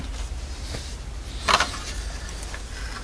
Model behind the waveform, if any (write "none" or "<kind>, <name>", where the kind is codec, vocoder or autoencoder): none